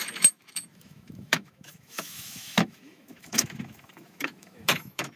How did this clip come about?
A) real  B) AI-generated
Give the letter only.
B